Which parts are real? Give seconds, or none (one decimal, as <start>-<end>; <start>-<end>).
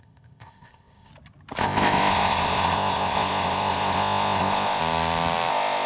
1.1-1.6; 4.8-5.5